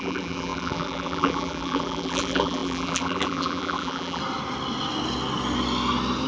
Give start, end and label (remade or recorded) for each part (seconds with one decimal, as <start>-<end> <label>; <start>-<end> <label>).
0.0-4.2 remade; 4.2-6.3 recorded

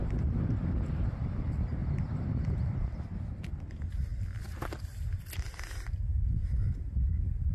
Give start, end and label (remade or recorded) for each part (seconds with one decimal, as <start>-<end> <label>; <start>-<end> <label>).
0.0-1.8 recorded; 1.8-3.3 remade; 3.3-4.1 recorded; 4.1-4.8 remade; 4.8-7.5 recorded